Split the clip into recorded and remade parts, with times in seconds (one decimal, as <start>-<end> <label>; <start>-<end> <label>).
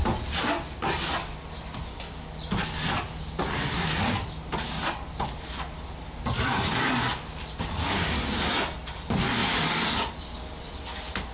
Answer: 0.0-9.4 recorded; 9.4-10.2 remade; 10.2-11.3 recorded